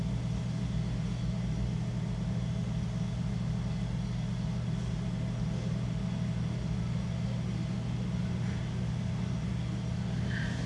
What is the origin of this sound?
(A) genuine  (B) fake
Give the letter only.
A